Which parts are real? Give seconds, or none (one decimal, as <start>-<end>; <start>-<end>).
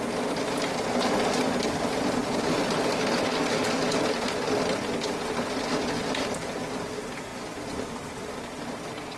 0.0-9.2